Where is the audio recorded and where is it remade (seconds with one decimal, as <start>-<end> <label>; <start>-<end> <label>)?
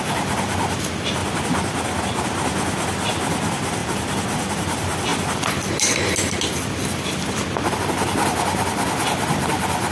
0.0-9.9 recorded